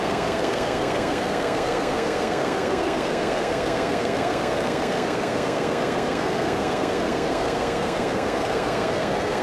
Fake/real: fake